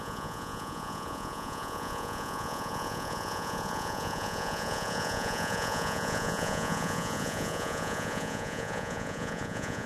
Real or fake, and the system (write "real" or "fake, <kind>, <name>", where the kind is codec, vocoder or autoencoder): fake, vocoder, Vocos